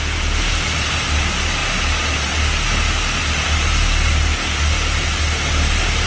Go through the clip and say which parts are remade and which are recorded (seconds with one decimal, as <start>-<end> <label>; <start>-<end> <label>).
0.0-6.1 recorded